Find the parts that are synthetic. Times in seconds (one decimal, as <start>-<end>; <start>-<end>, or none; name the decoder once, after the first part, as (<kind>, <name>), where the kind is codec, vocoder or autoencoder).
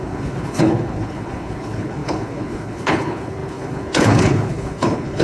0.0-5.2 (codec, HILCodec)